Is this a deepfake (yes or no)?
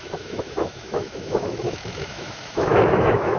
yes